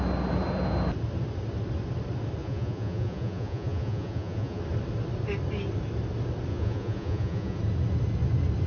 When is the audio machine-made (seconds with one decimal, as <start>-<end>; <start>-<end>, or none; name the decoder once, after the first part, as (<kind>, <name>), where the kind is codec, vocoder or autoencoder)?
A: 2.4-4.6 (vocoder, Vocos); 6.5-7.6